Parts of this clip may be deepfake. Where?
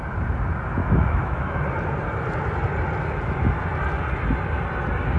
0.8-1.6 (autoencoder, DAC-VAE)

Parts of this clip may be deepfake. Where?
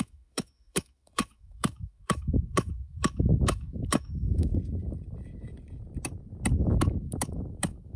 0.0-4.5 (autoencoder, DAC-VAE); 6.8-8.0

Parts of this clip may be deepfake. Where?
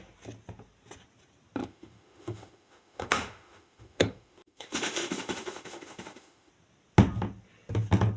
1.6-6.5 (autoencoder, DAC-VAE)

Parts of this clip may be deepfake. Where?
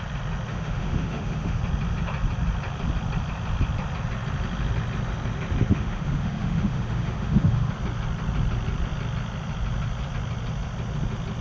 0.5-1.6 (autoencoder, DAC-VAE); 5.7-7.7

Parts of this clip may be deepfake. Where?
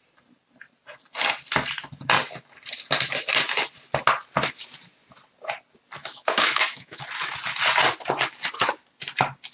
6.0-7.0 (autoencoder, DAC-VAE)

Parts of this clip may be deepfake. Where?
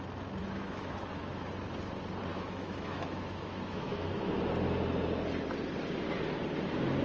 0.4-1.5 (autoencoder, DAC-VAE); 2.3-4.4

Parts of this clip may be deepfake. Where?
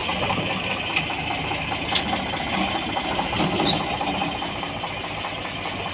none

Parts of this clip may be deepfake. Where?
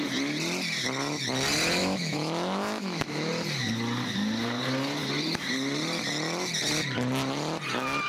1.8-3.3 (autoencoder, DAC-VAE)